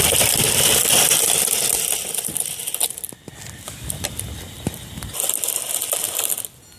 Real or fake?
real